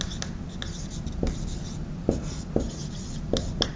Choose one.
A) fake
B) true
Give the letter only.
B